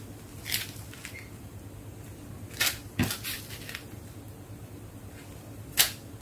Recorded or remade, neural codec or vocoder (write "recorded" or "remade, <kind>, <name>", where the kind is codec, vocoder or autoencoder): recorded